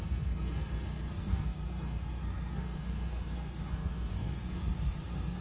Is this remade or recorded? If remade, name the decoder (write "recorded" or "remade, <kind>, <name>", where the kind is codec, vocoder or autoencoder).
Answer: remade, codec, SNAC